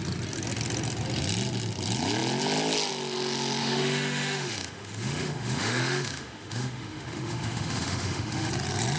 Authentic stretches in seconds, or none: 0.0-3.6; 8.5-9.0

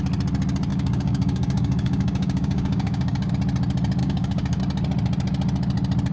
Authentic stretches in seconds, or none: 0.0-0.7; 3.3-4.0; 4.6-6.1

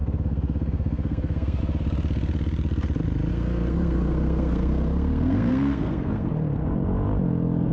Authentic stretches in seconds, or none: 1.6-3.3; 6.3-7.7

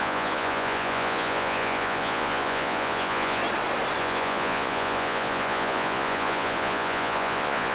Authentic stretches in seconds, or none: 3.4-4.0

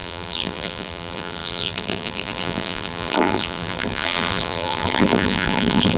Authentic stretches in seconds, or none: none

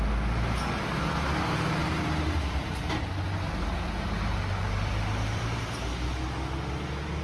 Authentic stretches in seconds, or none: 0.0-1.8; 5.6-7.2